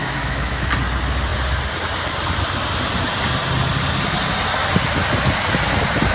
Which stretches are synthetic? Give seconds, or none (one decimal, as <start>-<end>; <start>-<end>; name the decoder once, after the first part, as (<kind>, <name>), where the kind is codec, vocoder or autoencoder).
0.0-0.7 (autoencoder, DAC-VAE)